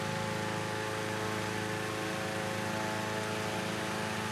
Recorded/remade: recorded